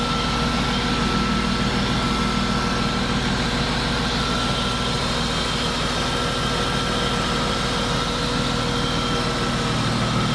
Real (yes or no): yes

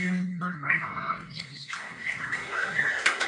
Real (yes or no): no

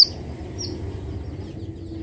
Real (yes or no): yes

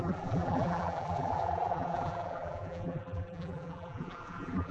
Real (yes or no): no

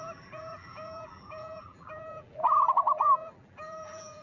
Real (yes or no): no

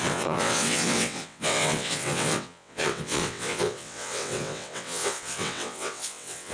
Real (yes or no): no